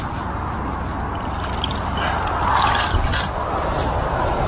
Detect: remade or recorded recorded